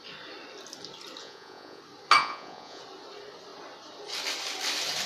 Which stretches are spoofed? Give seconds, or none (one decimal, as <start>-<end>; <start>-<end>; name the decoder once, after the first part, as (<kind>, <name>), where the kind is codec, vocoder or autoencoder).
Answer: 1.2-1.8 (vocoder, Vocos); 2.2-2.8